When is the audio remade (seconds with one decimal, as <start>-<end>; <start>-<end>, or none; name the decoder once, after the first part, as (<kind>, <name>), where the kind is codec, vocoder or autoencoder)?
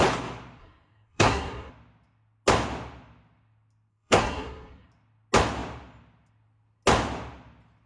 0.6-1.7 (codec, SNAC); 3.9-4.9